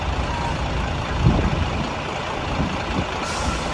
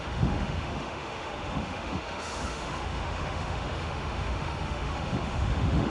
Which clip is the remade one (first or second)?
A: second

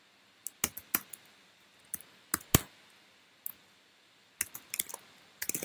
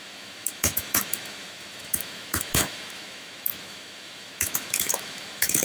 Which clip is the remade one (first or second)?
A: second